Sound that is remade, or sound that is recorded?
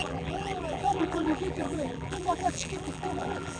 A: remade